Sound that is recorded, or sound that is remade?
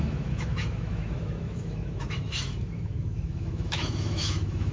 remade